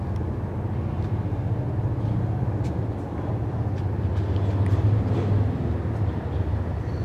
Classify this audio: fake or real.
real